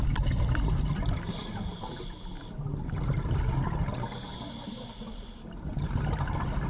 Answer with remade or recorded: recorded